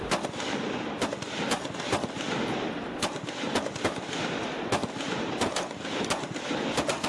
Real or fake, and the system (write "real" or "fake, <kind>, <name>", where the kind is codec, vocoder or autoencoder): real